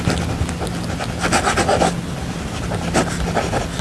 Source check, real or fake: real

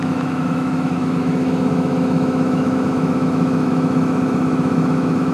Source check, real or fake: fake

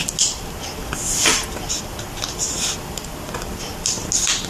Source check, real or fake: real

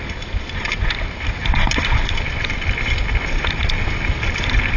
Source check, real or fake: real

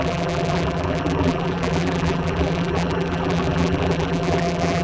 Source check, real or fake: fake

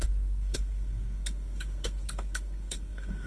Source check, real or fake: fake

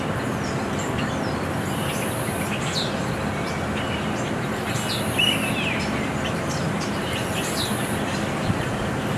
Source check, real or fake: real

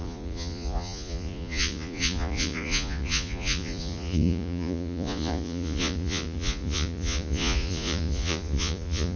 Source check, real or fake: fake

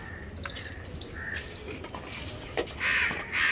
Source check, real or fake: real